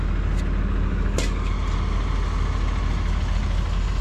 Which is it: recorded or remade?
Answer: recorded